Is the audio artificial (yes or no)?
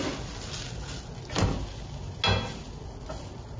no